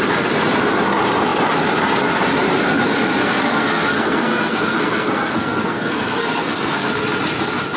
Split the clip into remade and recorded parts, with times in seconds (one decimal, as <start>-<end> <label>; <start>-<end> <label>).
0.0-3.2 recorded; 3.2-6.9 remade; 6.9-7.8 recorded